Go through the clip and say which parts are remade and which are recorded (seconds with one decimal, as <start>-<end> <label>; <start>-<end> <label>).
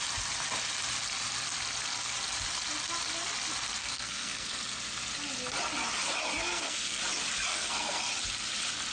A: 0.0-3.8 recorded; 3.8-4.8 remade; 4.8-6.4 recorded; 6.4-7.0 remade; 7.0-7.5 recorded; 7.5-8.1 remade; 8.1-8.9 recorded